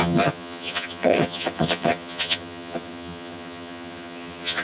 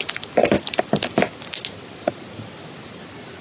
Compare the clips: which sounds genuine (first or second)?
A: second